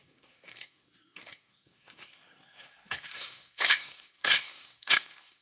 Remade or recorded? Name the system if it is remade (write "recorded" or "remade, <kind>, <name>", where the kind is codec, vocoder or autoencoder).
remade, codec, SNAC